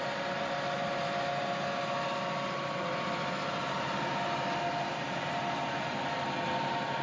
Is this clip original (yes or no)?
yes